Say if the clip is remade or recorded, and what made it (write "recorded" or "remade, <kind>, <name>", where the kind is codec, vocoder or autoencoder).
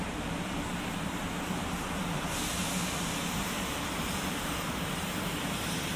remade, vocoder, BigVGAN v2